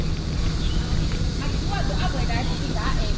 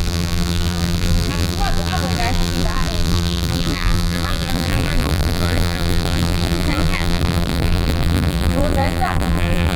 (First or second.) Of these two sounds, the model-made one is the second